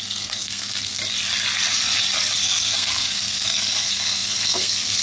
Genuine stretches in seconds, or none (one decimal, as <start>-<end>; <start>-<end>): 1.0-2.4